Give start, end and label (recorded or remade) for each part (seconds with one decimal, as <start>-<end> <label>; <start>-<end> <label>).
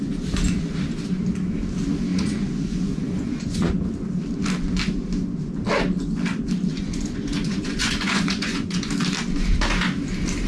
0.0-2.1 recorded; 2.1-3.8 remade; 3.8-6.7 recorded; 6.7-8.9 remade; 8.9-10.5 recorded